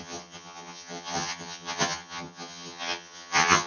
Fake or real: fake